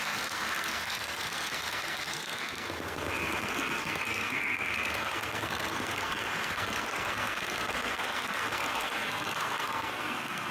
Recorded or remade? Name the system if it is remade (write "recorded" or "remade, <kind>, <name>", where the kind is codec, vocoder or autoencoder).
remade, codec, SNAC